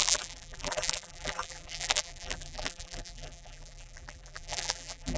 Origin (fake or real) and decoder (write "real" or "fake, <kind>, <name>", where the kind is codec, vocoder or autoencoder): fake, vocoder, BigVGAN v2